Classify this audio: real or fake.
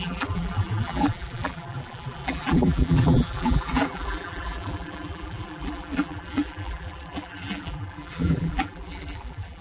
fake